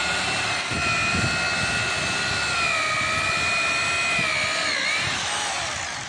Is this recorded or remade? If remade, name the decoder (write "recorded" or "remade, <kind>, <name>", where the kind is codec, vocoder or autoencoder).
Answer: recorded